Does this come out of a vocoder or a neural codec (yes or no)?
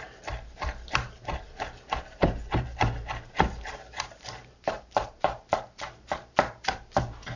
yes